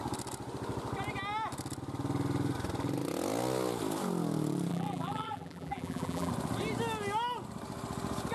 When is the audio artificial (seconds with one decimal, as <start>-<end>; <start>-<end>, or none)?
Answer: 4.7-6.3